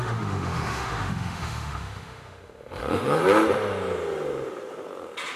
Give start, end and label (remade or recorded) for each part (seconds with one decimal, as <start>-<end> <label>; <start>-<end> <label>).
0.0-3.2 remade; 3.2-5.4 recorded

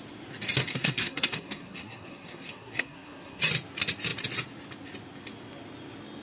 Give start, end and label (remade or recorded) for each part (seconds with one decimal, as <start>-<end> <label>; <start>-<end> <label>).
0.0-0.7 recorded; 0.7-3.4 remade; 3.4-6.2 recorded

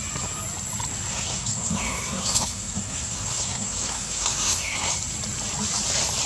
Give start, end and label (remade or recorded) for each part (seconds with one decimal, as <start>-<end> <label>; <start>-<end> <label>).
0.0-1.1 recorded; 1.1-4.9 remade; 4.9-6.3 recorded